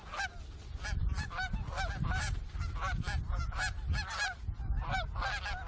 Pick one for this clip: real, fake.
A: real